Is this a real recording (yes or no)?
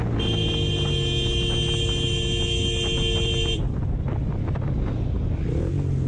yes